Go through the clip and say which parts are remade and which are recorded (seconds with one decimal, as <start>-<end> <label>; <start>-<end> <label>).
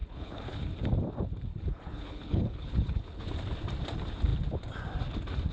0.0-0.7 remade; 0.7-1.5 recorded; 1.5-3.3 remade; 3.3-5.5 recorded